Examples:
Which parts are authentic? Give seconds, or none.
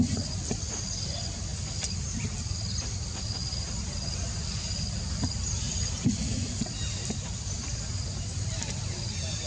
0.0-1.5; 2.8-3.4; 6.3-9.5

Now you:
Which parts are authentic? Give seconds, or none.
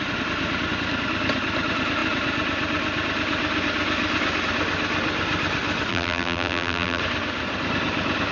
0.0-5.9; 7.0-8.3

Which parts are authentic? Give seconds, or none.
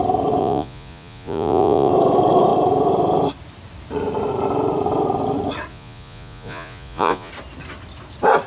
0.0-0.4; 1.9-5.7; 7.3-8.5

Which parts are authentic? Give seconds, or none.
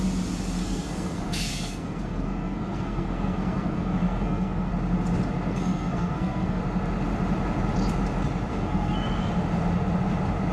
0.0-0.6; 4.7-5.5; 6.6-8.5; 9.3-10.5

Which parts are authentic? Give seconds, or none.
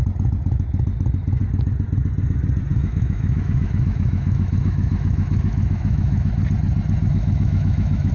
0.0-2.7; 6.3-7.0